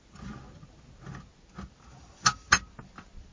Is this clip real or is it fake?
real